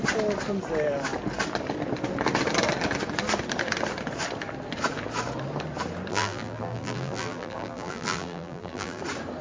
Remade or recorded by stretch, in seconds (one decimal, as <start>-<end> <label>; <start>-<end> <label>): 0.0-6.1 recorded; 6.1-9.0 remade; 9.0-9.4 recorded